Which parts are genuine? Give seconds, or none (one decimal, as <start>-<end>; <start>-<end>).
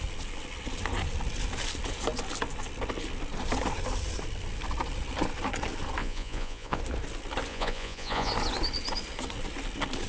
0.0-6.0; 6.8-7.5; 8.3-10.1